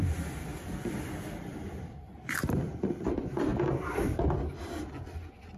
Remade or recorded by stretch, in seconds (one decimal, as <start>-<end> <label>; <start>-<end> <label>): 0.0-3.5 remade; 3.5-5.6 recorded